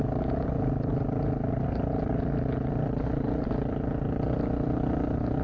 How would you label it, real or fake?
real